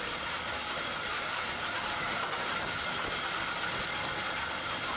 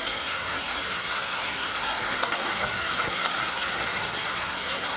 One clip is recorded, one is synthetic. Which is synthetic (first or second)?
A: second